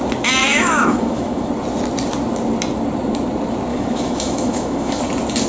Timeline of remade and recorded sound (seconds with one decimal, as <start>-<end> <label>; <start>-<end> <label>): 0.0-0.4 recorded; 0.4-1.5 remade; 1.5-3.7 recorded; 3.7-5.0 remade; 5.0-5.5 recorded